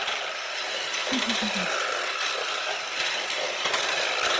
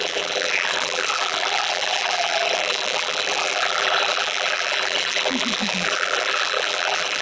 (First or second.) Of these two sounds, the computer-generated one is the second